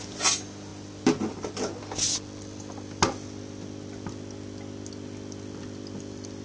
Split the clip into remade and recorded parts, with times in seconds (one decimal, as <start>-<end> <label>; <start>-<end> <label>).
0.0-6.4 recorded